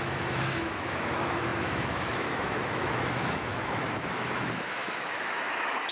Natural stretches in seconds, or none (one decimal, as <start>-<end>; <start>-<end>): none